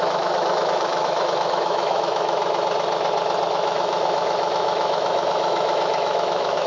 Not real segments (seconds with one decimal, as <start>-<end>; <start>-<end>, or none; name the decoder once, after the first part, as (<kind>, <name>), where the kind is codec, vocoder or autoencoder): 0.0-2.4 (autoencoder, DAC-VAE); 3.5-6.7